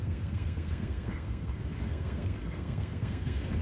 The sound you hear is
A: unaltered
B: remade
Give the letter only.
B